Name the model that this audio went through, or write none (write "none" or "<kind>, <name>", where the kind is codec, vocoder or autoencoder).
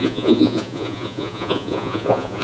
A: vocoder, Vocos